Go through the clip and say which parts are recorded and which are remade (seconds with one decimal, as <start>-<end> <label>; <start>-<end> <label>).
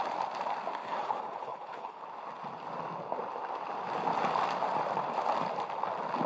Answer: 0.0-0.8 recorded; 0.8-2.0 remade; 2.0-6.3 recorded